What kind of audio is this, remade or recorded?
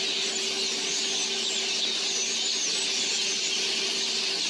recorded